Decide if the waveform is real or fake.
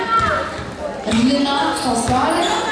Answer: real